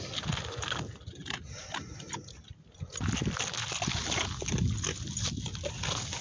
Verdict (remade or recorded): recorded